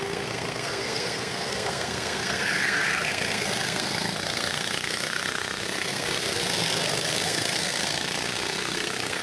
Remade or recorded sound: remade